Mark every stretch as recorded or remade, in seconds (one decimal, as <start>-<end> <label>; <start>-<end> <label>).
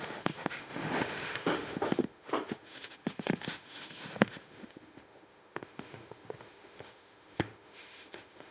0.0-8.5 remade